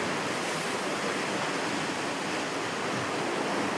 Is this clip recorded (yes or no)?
yes